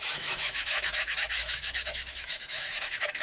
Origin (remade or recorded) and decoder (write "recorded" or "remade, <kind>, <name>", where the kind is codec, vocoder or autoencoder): remade, autoencoder, DAC-VAE